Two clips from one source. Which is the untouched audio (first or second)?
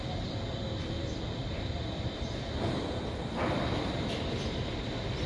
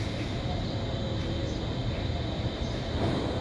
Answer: second